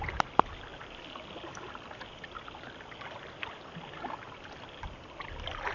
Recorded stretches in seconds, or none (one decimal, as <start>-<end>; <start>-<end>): 0.0-5.7